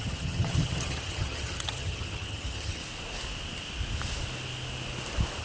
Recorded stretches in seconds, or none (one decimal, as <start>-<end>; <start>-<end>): 2.8-5.4